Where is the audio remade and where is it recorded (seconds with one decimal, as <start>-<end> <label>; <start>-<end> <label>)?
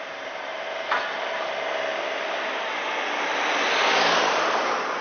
0.0-0.5 recorded; 0.5-1.0 remade; 1.0-5.0 recorded